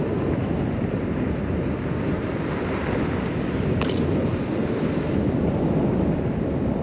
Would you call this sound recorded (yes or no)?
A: yes